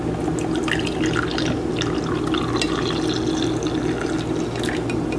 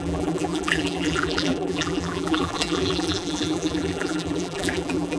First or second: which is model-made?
second